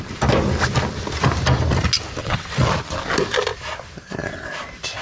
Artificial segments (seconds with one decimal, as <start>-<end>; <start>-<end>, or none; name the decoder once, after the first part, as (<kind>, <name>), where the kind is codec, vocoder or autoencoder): 2.2-2.7 (vocoder, WaveNeXt)